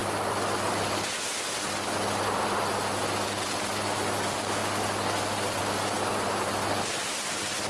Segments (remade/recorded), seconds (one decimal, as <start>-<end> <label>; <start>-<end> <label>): 0.0-7.7 recorded